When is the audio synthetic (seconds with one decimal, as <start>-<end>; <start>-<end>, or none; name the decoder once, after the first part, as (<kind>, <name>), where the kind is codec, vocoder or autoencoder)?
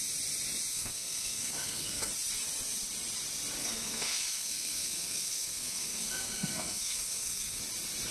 0.7-2.1 (codec, SNAC); 3.6-7.6